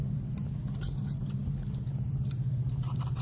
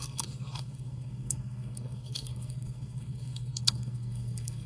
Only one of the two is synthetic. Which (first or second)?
second